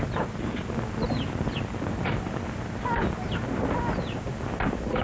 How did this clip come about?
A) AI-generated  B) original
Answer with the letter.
B